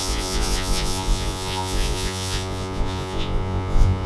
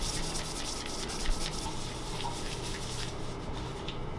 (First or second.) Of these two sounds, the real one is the second